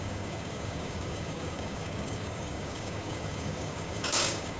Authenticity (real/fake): fake